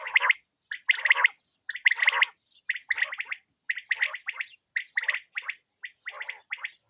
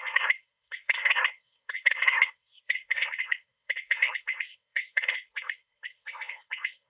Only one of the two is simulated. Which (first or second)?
second